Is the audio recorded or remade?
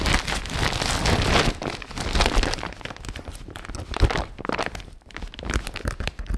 recorded